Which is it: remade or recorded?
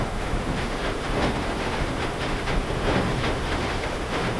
remade